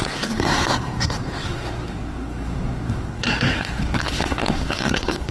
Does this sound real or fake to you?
fake